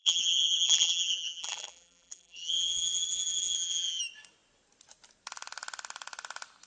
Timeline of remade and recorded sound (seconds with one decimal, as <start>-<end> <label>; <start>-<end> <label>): 0.0-4.0 remade; 4.0-6.7 recorded